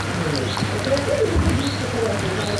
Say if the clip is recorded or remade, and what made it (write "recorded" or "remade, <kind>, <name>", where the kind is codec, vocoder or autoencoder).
remade, vocoder, BigVGAN v2